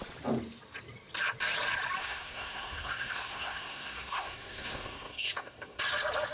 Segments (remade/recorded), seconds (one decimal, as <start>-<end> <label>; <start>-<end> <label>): 0.0-2.0 recorded; 2.0-5.8 remade; 5.8-6.3 recorded